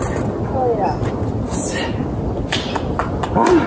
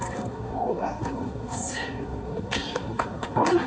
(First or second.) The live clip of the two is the first